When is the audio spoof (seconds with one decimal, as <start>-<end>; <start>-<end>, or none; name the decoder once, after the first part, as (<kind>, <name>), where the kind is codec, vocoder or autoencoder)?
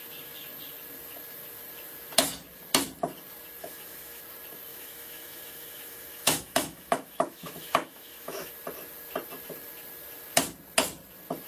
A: 3.6-4.2 (autoencoder, DAC-VAE); 4.7-8.5